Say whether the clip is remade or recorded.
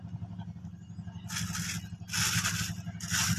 recorded